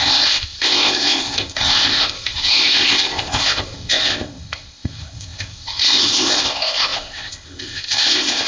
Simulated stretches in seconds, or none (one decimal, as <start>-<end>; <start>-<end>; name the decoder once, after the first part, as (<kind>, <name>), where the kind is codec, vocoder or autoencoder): 0.0-8.5 (codec, ZipCodec)